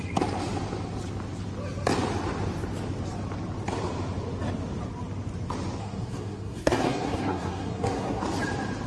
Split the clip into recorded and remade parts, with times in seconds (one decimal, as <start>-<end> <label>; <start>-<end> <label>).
0.0-5.8 recorded; 5.8-8.2 remade; 8.2-8.9 recorded